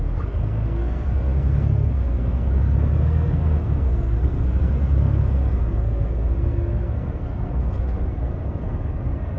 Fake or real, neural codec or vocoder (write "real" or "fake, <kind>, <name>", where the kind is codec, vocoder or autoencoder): fake, codec, SNAC